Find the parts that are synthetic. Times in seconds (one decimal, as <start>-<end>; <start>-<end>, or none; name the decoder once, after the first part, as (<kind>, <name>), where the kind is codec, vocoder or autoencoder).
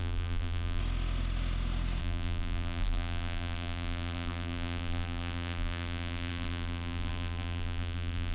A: 0.0-0.8 (vocoder, BigVGAN v2); 2.0-8.3